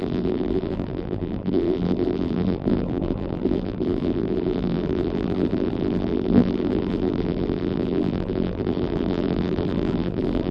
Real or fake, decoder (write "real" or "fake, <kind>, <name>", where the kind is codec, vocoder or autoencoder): fake, vocoder, BigVGAN v2